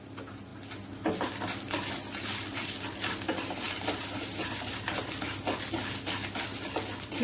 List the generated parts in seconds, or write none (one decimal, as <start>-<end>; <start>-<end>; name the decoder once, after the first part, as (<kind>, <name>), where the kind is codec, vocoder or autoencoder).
none